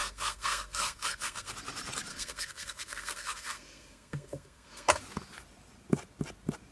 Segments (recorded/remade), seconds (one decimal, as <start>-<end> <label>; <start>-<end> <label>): 0.0-1.5 remade; 1.5-2.1 recorded; 2.1-5.0 remade; 5.0-6.7 recorded